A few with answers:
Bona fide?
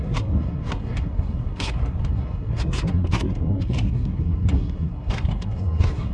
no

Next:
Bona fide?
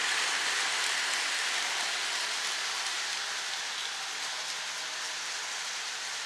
yes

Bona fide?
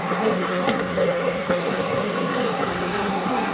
no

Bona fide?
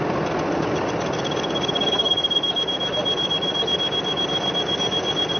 yes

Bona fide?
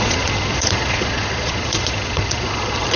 no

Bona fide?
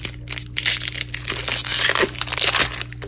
yes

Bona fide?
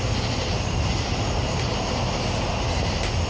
yes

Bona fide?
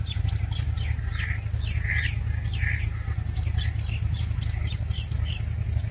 yes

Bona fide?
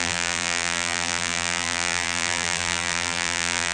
no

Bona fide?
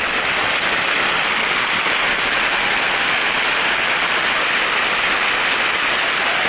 yes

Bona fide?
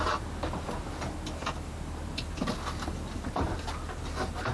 yes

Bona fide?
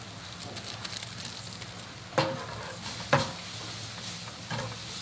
yes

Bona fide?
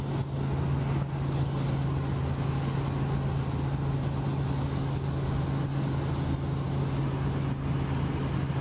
yes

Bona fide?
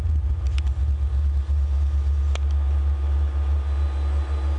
yes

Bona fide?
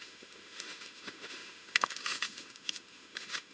no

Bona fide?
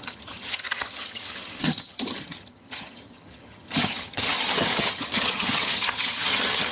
no